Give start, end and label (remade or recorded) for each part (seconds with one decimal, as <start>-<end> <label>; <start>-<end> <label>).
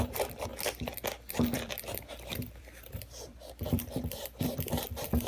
0.0-0.5 remade; 0.5-1.3 recorded; 1.3-5.3 remade